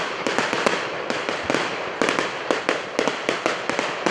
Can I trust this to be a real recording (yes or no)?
yes